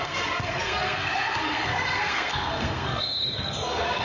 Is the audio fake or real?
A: fake